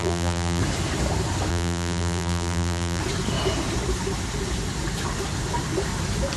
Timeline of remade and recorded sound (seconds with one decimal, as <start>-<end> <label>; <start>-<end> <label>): 0.0-0.6 remade; 0.6-1.5 recorded; 1.5-3.0 remade; 3.0-6.4 recorded